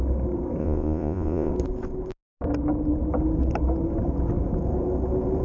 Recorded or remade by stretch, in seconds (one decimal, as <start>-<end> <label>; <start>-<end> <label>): 0.0-0.6 recorded; 0.6-1.5 remade; 1.5-5.4 recorded